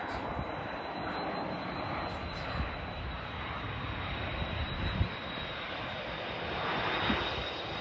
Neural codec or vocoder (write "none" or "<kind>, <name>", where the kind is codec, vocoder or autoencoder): none